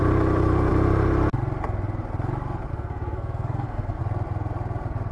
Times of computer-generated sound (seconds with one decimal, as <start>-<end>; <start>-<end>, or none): 2.7-4.0